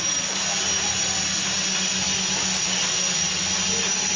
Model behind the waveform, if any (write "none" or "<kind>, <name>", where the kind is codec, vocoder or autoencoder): none